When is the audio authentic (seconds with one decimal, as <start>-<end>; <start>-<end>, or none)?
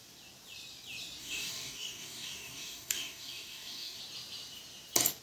0.0-1.2; 4.0-5.2